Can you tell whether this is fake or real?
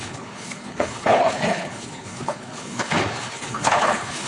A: fake